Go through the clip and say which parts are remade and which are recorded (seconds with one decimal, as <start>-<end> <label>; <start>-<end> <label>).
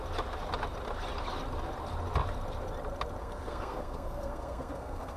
0.0-3.2 recorded; 3.2-5.2 remade